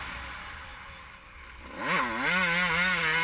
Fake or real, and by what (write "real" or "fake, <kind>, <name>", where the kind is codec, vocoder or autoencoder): real